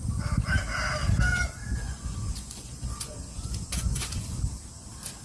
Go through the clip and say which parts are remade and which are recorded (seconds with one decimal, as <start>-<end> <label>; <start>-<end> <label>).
0.0-1.3 recorded; 1.3-4.4 remade; 4.4-5.2 recorded

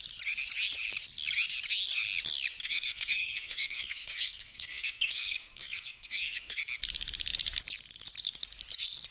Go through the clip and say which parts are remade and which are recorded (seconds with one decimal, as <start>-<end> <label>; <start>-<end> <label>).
0.0-2.6 recorded; 2.6-6.6 remade; 6.6-9.1 recorded